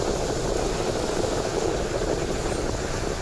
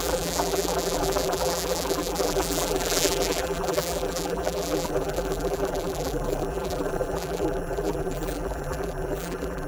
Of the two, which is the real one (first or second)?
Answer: first